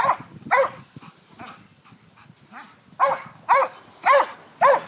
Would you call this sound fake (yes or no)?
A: no